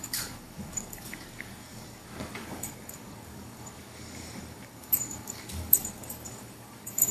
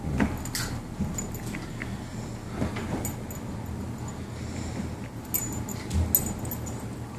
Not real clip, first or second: first